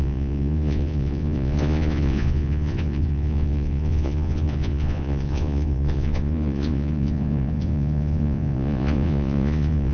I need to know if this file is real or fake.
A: fake